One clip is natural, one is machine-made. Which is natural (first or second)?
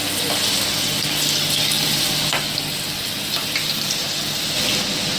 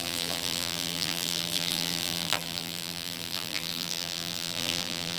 first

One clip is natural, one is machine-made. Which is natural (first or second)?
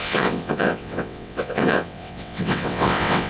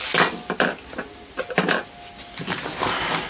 second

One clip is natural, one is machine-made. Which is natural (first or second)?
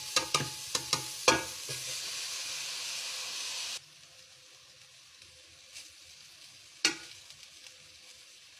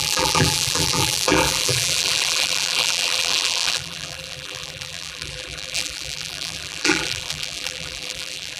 first